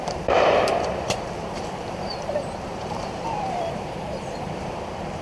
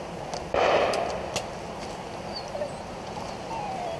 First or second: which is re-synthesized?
first